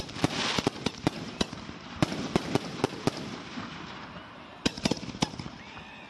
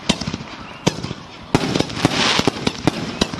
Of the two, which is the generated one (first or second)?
first